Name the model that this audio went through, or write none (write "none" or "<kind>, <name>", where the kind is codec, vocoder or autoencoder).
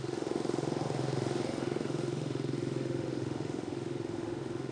autoencoder, DAC-VAE